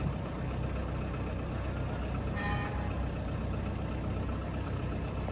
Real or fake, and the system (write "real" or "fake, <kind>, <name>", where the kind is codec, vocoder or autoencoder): real